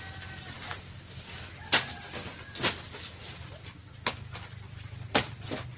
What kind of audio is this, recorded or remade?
recorded